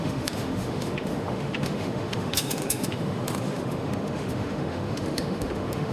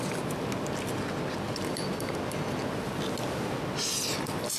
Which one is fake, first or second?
first